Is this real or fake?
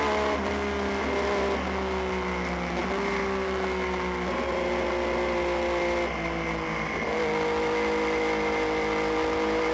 real